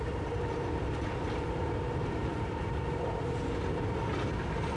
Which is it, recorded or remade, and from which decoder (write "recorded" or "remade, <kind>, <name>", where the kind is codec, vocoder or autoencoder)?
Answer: recorded